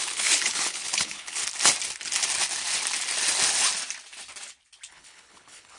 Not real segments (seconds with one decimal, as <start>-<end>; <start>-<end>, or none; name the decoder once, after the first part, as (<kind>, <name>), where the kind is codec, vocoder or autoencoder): 0.0-1.4 (codec, HILCodec); 4.9-5.8